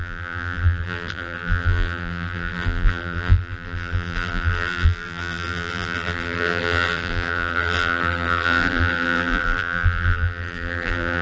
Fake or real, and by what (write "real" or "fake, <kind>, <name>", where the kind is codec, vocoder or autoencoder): fake, vocoder, BigVGAN v2